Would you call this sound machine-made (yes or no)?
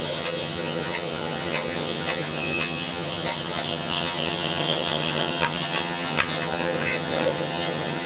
yes